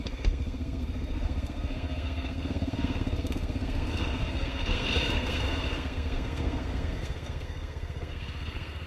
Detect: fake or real fake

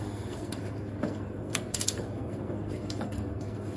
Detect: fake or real fake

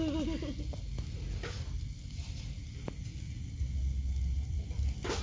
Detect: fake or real real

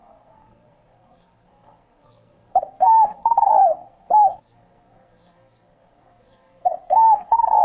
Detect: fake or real fake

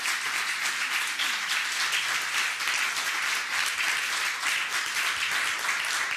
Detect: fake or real real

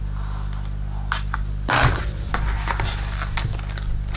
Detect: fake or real real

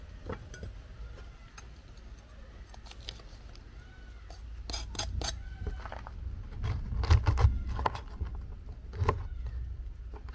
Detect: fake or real real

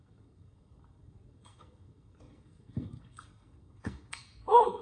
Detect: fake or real fake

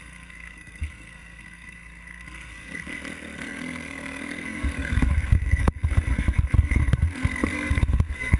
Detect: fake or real fake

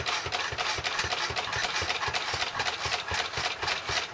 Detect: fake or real real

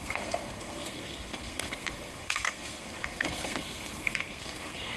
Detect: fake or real fake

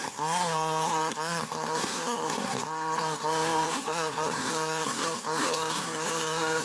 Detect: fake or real fake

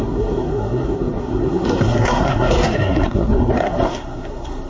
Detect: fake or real fake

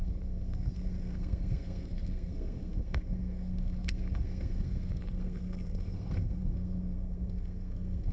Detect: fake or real fake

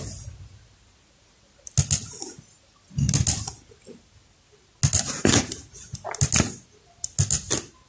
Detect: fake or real real